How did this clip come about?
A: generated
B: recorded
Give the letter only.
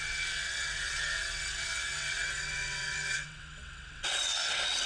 A